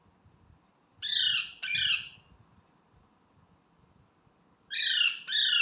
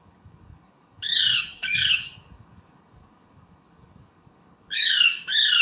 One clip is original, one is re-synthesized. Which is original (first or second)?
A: first